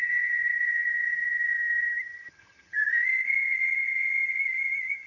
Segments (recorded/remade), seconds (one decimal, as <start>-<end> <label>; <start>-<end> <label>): 0.0-5.1 remade